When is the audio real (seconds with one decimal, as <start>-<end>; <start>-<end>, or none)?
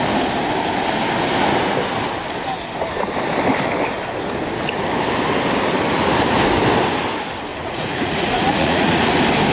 0.0-7.5; 9.1-9.5